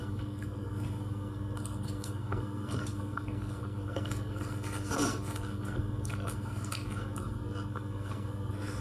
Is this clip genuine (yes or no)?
no